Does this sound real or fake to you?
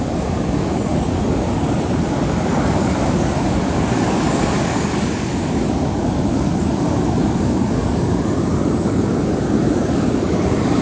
fake